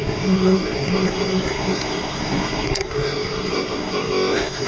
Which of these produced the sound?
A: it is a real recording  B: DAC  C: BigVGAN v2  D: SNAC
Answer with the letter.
D